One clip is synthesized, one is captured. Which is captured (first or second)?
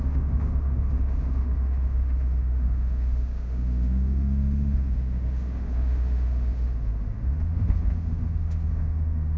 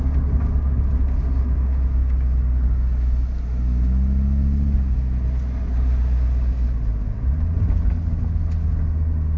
second